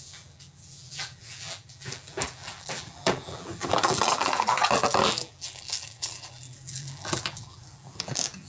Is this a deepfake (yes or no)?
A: yes